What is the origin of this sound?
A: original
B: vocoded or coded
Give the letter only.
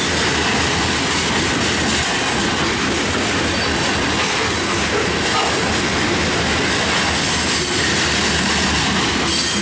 A